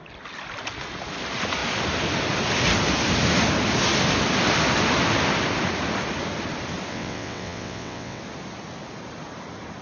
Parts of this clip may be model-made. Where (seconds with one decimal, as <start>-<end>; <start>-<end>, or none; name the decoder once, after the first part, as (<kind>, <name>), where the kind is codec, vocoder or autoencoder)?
6.9-8.2 (vocoder, WaveNeXt)